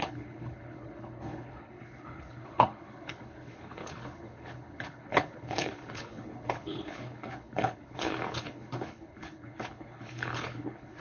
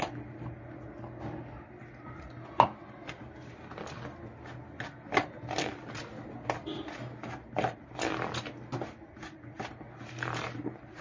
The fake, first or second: first